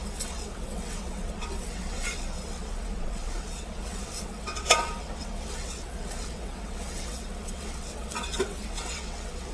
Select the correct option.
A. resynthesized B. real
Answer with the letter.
A